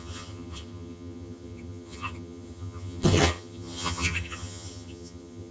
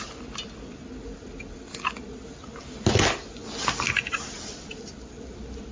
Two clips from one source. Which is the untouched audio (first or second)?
second